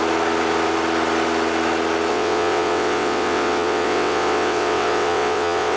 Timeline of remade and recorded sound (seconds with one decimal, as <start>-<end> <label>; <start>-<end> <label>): 0.0-2.1 recorded; 2.1-5.8 remade